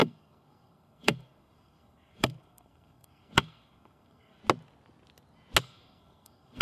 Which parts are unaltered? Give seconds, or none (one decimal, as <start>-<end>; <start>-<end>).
4.4-5.6